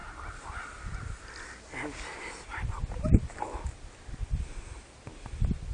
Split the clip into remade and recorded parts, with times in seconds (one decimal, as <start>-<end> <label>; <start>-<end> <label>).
0.0-5.7 recorded